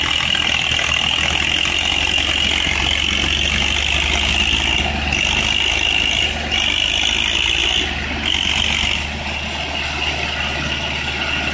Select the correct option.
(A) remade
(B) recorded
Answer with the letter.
B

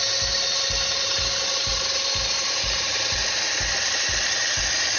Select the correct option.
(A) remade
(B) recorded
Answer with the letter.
B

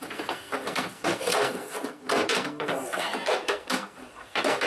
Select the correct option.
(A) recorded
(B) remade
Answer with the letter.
B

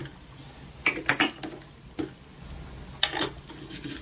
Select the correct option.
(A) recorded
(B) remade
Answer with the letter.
A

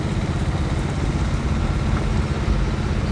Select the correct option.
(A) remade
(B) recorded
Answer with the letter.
B